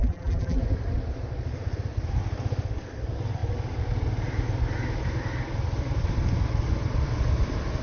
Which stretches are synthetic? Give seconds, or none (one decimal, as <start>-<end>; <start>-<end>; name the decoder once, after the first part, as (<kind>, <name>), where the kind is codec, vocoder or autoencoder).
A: 0.0-0.6 (vocoder, BigVGAN v2)